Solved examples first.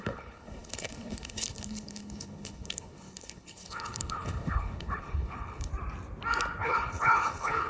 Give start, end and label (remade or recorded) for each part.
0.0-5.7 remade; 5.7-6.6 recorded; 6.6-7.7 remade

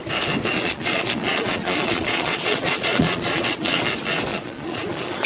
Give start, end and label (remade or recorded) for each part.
0.0-0.6 recorded; 0.6-3.8 remade; 3.8-4.3 recorded; 4.3-5.3 remade

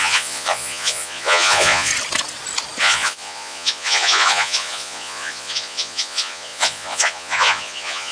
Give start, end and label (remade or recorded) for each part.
0.0-1.9 remade; 1.9-2.8 recorded; 2.8-8.1 remade

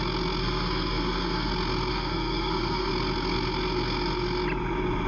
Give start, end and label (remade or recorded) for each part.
0.0-0.4 recorded; 0.4-1.5 remade; 1.5-1.9 recorded; 1.9-2.9 remade; 2.9-5.1 recorded